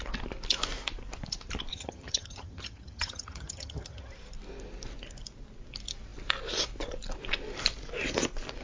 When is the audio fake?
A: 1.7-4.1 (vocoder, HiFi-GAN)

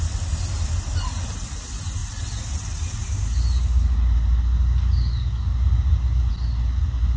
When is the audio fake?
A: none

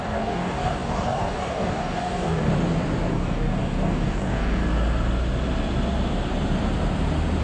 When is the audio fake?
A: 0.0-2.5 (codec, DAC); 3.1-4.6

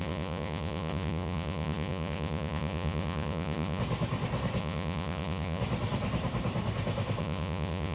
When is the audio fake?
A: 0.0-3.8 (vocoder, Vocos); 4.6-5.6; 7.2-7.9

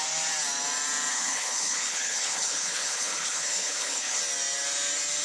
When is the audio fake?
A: 1.1-4.2 (codec, HILCodec)

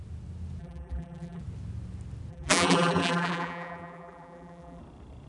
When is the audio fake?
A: 0.6-1.4 (vocoder, BigVGAN v2); 2.3-4.8

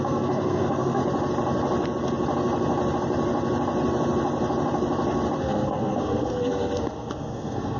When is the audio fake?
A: 0.0-1.0 (codec, SNAC); 5.4-7.8